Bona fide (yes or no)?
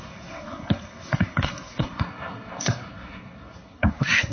no